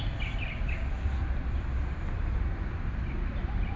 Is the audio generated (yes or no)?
no